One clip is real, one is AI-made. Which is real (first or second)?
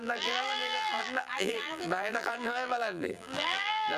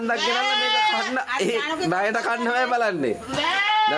second